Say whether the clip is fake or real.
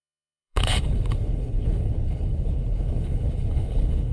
fake